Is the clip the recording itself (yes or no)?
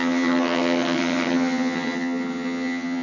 no